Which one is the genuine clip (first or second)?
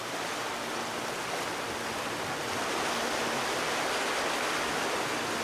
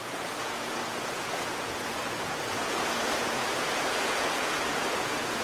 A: first